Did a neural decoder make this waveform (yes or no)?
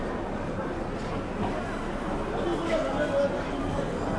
no